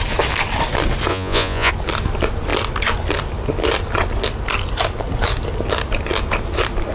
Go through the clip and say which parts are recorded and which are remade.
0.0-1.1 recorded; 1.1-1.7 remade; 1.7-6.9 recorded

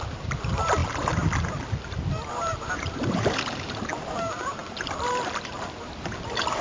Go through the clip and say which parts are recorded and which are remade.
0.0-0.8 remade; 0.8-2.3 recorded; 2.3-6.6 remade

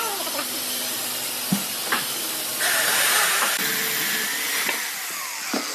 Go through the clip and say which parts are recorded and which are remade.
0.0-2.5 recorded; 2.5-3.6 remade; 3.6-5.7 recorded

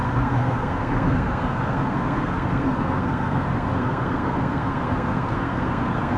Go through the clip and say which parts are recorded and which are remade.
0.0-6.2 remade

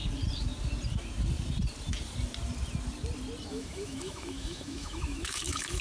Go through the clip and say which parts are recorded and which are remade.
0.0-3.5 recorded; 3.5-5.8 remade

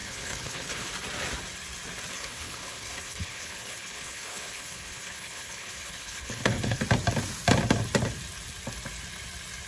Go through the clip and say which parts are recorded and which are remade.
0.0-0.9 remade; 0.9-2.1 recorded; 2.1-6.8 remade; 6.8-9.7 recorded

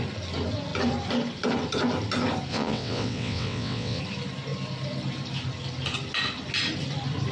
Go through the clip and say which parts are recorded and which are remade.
0.0-2.5 recorded; 2.5-4.0 remade; 4.0-7.3 recorded